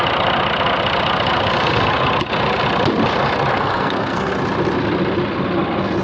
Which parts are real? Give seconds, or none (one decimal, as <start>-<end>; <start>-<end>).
0.0-3.5; 4.3-6.0